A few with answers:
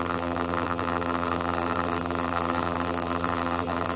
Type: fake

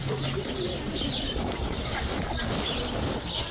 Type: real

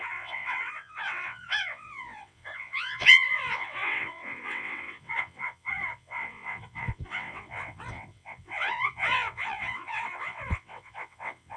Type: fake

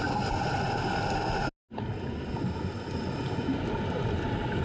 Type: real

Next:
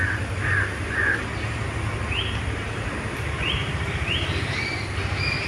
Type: real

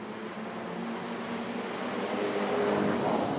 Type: real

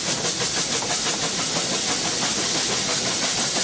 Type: real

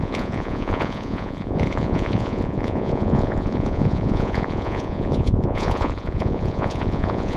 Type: fake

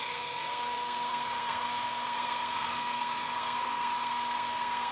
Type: fake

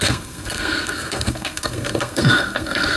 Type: fake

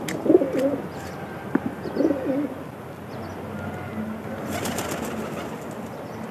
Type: real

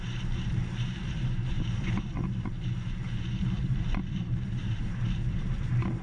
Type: fake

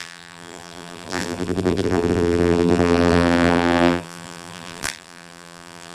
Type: fake